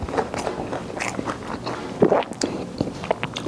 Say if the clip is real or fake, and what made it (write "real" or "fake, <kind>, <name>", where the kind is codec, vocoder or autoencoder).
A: real